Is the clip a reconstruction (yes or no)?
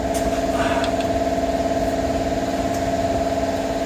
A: no